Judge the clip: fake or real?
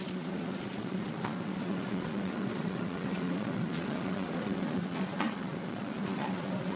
fake